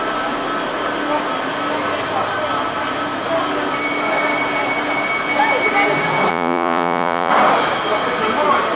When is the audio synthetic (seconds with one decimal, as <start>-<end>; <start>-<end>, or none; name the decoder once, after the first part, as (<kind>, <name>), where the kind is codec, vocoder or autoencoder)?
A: 6.3-7.3 (vocoder, Vocos)